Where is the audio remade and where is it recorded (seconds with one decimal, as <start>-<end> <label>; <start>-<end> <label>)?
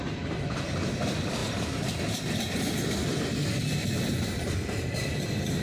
0.0-1.4 recorded; 1.4-4.5 remade; 4.5-5.6 recorded